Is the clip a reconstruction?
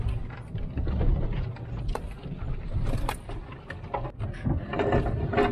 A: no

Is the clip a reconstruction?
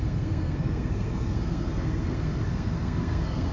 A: yes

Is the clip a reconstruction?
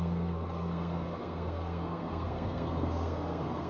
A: yes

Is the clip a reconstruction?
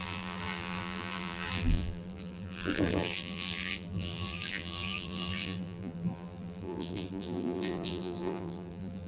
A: yes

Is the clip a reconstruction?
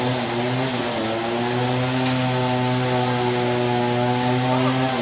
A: no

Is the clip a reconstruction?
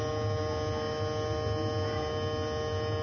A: no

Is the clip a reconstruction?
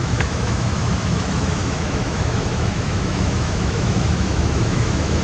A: yes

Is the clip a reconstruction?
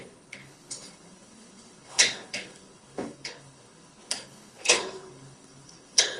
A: yes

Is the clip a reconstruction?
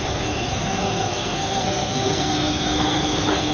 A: yes